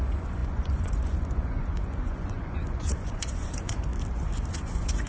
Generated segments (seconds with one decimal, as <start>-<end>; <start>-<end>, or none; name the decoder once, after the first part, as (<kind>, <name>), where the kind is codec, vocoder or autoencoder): 0.0-3.9 (vocoder, Vocos); 4.5-5.1